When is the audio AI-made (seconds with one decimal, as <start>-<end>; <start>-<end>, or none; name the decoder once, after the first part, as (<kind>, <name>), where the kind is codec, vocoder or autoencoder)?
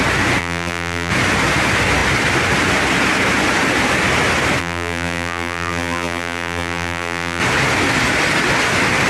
0.4-1.1 (vocoder, BigVGAN v2); 4.6-7.4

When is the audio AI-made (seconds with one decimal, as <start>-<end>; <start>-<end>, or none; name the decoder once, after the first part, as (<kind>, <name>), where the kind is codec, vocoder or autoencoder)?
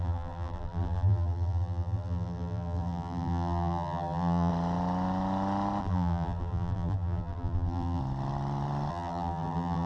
0.0-4.5 (vocoder, BigVGAN v2); 5.8-8.0; 8.9-9.9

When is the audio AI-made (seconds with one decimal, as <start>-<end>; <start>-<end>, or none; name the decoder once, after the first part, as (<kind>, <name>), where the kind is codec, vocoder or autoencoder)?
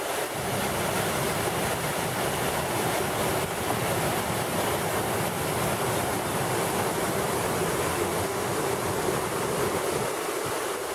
7.9-8.5 (autoencoder, DAC-VAE)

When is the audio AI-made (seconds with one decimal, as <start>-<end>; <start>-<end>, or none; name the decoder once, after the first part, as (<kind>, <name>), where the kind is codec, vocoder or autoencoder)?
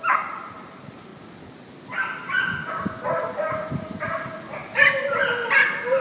0.0-1.1 (vocoder, BigVGAN v2); 3.3-5.4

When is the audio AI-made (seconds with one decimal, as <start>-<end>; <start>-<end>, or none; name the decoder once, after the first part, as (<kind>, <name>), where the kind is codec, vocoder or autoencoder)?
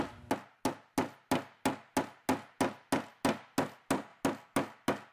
none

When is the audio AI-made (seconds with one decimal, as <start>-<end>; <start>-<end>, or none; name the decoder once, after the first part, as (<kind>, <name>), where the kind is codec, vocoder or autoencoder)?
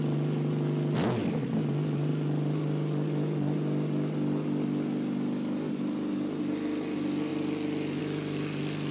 none